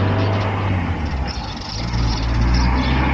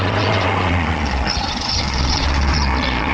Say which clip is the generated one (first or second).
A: second